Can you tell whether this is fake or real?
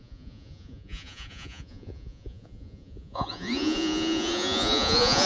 fake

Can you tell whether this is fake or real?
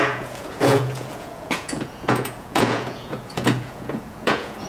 fake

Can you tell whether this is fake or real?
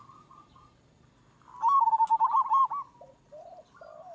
real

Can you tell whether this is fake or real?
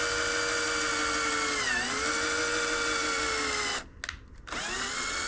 real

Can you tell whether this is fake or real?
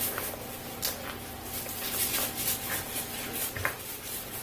real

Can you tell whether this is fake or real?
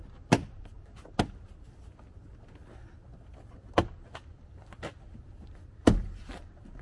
real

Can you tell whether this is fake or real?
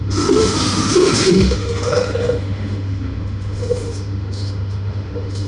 fake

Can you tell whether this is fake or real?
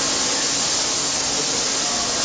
real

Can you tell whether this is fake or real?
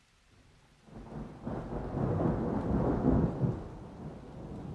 real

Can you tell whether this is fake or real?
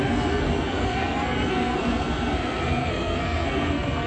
fake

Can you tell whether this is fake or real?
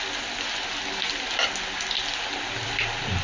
real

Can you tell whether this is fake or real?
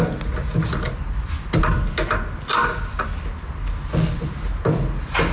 real